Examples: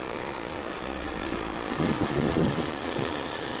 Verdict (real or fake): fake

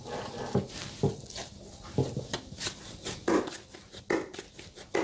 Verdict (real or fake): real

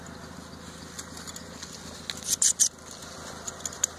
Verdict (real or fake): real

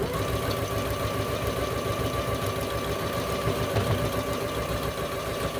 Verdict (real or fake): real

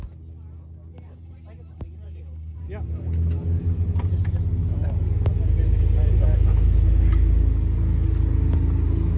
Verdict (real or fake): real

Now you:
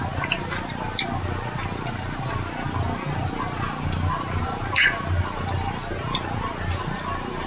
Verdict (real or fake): real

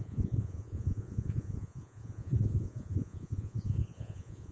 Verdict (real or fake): fake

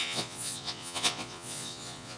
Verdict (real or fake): fake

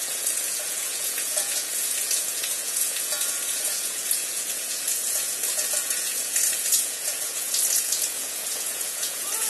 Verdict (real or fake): fake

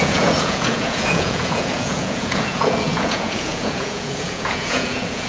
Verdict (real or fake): fake